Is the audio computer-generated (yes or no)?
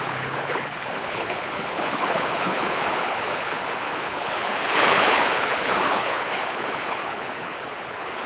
yes